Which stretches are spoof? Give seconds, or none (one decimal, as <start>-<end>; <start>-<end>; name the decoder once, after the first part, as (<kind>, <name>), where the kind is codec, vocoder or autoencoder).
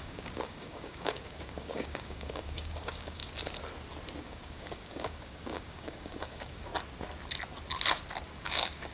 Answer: 0.0-3.2 (codec, DAC); 4.2-6.7; 8.4-8.9